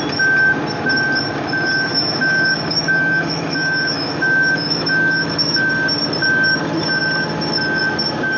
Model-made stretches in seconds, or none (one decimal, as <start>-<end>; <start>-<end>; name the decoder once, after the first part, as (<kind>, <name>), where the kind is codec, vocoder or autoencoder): 1.9-5.7 (autoencoder, DAC-VAE)